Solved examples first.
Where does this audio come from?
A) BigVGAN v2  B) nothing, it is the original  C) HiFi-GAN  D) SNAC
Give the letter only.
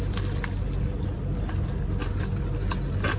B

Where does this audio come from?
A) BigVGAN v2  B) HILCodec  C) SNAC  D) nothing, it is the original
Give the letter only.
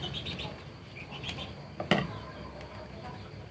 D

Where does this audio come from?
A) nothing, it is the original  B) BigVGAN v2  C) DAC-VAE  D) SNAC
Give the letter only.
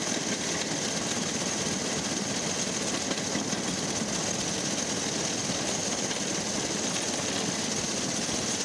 A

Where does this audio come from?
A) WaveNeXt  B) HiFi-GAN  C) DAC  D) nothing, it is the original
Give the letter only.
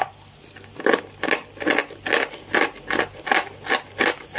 D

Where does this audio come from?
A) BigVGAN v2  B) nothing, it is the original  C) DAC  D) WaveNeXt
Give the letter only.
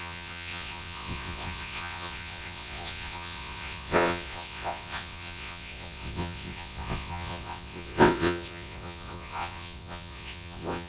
D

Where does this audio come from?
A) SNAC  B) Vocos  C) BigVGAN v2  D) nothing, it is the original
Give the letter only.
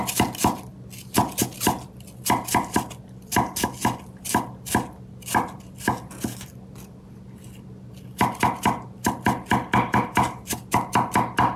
D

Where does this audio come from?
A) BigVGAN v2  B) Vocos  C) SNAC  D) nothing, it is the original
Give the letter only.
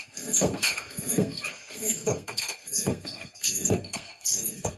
C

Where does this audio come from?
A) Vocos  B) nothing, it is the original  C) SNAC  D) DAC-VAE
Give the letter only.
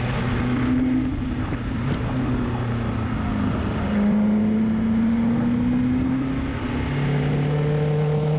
B